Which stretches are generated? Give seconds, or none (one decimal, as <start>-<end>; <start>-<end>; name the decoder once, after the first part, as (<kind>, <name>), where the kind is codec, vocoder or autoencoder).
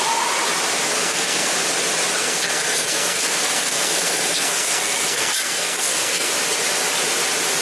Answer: 1.0-1.5 (codec, SNAC); 2.2-6.3